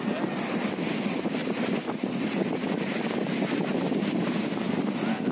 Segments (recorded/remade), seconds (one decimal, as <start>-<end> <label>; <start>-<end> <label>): 0.0-5.3 recorded